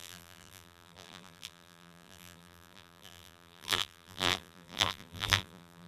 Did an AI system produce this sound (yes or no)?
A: yes